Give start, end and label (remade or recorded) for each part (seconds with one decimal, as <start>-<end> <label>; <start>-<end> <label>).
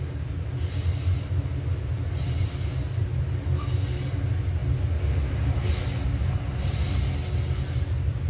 0.0-8.3 recorded